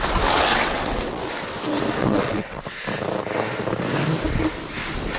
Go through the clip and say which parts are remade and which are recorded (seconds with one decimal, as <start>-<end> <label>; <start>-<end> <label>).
0.0-0.5 recorded; 0.5-1.3 remade; 1.3-2.0 recorded; 2.0-2.7 remade; 2.7-5.2 recorded